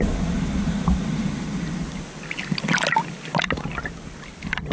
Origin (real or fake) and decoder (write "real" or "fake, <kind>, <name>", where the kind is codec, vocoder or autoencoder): real